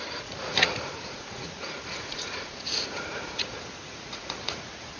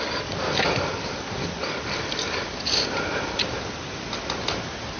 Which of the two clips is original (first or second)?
second